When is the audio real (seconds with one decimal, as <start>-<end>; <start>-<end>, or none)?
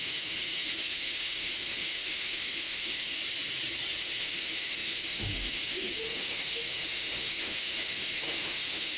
3.2-4.0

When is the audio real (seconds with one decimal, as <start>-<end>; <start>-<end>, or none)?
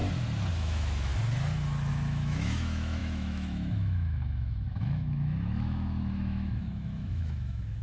0.0-0.5; 1.1-1.9